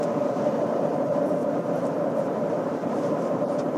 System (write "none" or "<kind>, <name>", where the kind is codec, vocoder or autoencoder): vocoder, BigVGAN v2